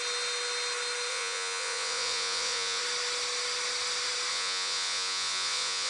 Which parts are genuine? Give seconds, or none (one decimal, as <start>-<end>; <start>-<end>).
0.0-1.1; 2.8-4.3

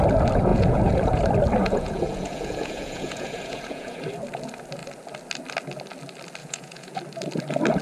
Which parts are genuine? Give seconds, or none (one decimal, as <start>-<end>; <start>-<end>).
0.0-0.5; 1.2-1.6; 4.0-6.4; 7.0-7.8